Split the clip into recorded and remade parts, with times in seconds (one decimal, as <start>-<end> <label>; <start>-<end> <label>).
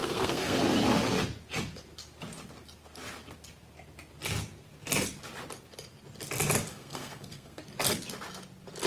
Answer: 0.0-0.6 remade; 0.6-6.7 recorded; 6.7-7.6 remade; 7.6-8.9 recorded